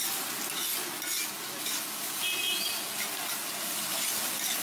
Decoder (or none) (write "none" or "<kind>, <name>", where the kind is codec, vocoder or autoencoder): none